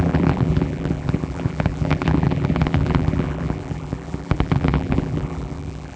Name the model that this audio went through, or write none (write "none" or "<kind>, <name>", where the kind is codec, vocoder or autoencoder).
vocoder, BigVGAN v2